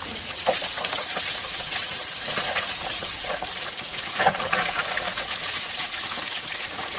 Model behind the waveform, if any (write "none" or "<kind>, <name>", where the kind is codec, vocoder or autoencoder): vocoder, Vocos